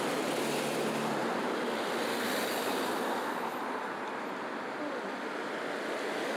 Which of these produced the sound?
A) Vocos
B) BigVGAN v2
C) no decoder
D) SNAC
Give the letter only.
C